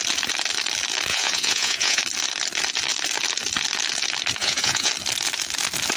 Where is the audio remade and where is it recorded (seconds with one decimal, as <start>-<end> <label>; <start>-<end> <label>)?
0.0-1.1 recorded; 1.1-2.0 remade; 2.0-4.4 recorded; 4.4-4.9 remade; 4.9-6.0 recorded